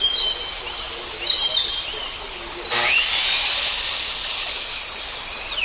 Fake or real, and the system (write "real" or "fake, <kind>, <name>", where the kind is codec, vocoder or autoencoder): real